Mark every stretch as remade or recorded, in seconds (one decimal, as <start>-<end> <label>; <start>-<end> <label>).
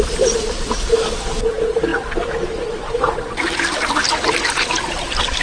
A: 0.0-5.4 recorded